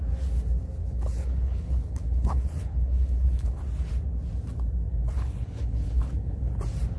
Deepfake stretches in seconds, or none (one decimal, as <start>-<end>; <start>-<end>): 0.8-3.6; 4.9-6.5